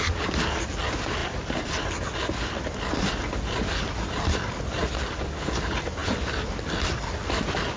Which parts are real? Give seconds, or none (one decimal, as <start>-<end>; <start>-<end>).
0.0-1.2; 4.1-7.8